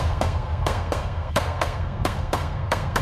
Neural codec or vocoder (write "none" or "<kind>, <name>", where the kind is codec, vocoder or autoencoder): codec, SNAC